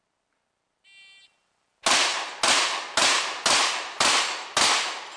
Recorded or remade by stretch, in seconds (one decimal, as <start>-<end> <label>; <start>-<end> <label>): 0.0-5.2 recorded

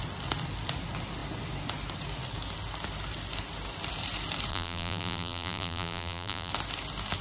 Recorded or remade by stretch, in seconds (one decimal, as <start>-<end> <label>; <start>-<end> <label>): 0.0-4.5 recorded; 4.5-6.5 remade; 6.5-7.2 recorded

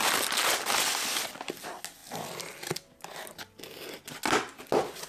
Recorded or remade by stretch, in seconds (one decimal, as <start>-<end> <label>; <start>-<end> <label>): 0.0-2.0 recorded; 2.0-2.6 remade; 2.6-5.1 recorded